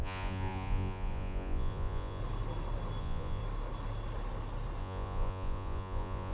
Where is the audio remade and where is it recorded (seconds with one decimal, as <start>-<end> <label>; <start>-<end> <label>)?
0.0-2.2 remade; 2.2-3.0 recorded; 3.0-3.4 remade; 3.4-4.8 recorded; 4.8-6.3 remade